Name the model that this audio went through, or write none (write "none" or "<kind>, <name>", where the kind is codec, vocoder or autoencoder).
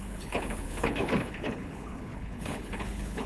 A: codec, HILCodec